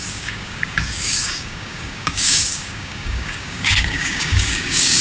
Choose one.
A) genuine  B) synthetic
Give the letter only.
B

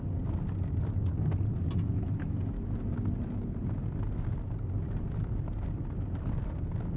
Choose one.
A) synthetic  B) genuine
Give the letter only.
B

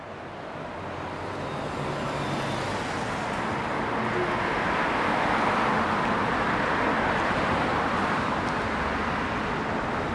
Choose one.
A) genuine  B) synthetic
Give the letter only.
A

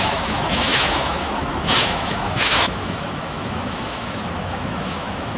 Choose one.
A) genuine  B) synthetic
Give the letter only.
B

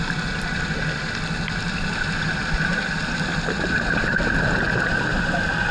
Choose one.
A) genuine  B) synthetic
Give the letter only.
A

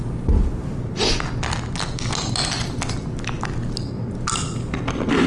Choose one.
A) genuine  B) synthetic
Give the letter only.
A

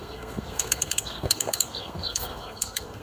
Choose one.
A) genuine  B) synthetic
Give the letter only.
B